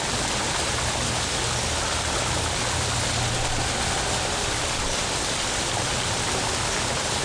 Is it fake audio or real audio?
real